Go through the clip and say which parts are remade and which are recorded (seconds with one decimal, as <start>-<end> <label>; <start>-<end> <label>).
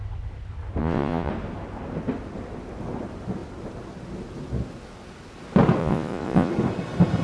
0.0-0.8 recorded; 0.8-1.3 remade; 1.3-5.8 recorded; 5.8-6.5 remade; 6.5-7.2 recorded